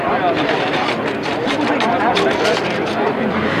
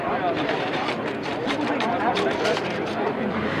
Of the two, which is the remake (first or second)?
second